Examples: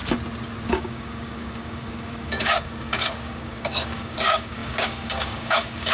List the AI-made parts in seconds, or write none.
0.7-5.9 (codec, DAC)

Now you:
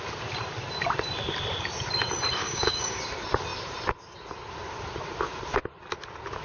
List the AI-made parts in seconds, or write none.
2.4-3.0 (codec, DAC)